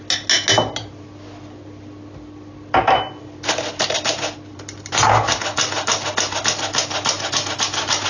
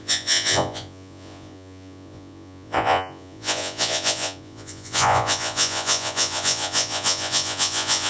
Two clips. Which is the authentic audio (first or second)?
first